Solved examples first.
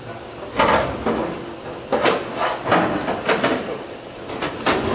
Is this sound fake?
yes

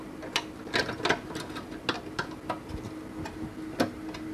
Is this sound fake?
no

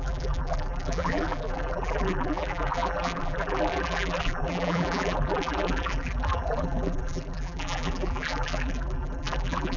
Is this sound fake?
yes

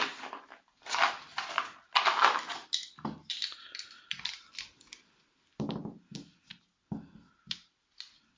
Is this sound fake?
no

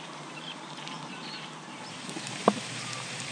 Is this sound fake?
yes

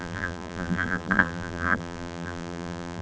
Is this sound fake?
yes